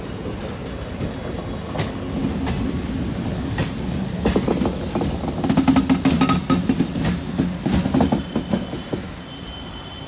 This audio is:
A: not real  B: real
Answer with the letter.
B